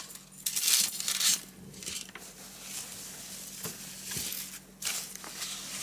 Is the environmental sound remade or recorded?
recorded